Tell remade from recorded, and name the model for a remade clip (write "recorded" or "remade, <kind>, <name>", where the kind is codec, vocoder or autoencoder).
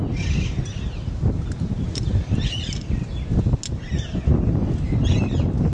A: recorded